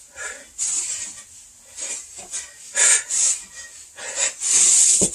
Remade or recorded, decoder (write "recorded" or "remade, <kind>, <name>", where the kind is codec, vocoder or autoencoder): recorded